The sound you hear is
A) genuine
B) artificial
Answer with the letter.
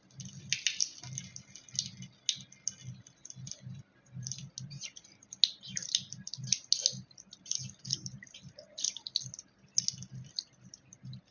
A